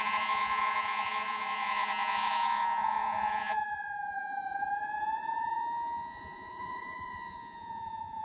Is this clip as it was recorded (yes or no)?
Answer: no